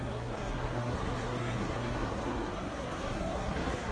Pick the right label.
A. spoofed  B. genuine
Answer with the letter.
A